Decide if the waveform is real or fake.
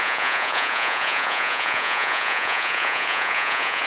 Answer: fake